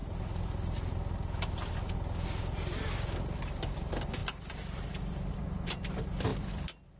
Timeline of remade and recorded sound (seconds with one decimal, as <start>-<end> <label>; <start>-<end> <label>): 0.0-3.4 recorded; 3.4-7.0 remade